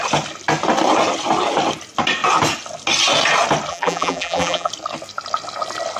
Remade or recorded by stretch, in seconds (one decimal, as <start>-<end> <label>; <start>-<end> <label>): 0.0-3.7 recorded; 3.7-4.7 remade; 4.7-6.0 recorded